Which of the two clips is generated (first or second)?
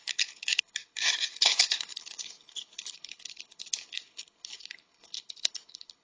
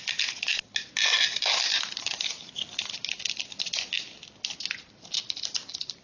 first